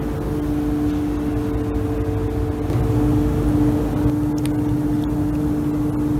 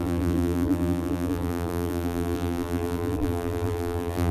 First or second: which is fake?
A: second